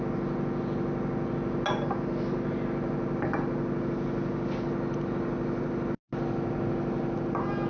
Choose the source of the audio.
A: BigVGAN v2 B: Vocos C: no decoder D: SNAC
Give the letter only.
C